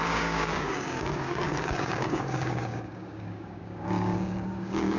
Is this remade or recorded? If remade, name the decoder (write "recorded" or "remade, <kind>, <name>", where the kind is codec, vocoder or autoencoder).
remade, codec, DAC